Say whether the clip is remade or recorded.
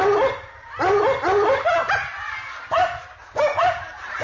remade